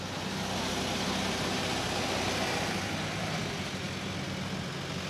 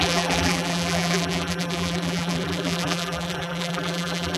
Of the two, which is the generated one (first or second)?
second